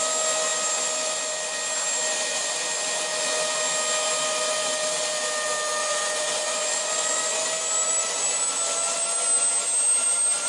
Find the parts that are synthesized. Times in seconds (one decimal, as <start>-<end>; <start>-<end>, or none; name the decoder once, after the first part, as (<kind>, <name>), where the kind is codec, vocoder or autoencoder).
5.8-7.2 (vocoder, Vocos)